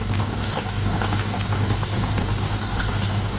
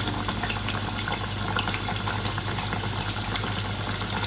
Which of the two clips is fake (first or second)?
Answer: first